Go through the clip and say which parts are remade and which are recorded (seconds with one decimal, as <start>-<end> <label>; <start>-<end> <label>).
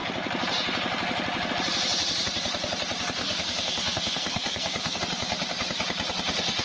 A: 0.0-3.2 recorded; 3.2-5.0 remade; 5.0-6.6 recorded